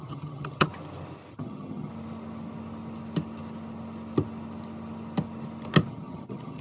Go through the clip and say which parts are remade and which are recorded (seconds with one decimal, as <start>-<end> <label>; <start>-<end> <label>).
0.0-0.7 remade; 0.7-1.3 recorded; 1.3-1.9 remade; 1.9-5.9 recorded; 5.9-6.6 remade